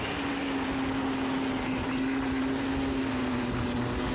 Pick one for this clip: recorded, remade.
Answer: recorded